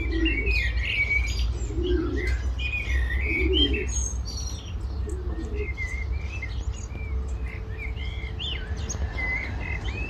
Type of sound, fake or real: real